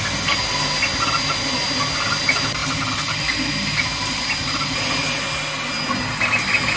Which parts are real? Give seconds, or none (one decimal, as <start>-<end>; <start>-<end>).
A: 0.0-2.6; 5.2-6.8